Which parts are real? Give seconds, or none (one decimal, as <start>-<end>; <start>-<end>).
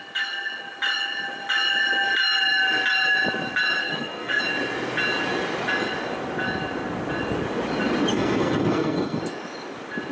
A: 0.0-3.8; 4.4-8.1; 9.2-10.1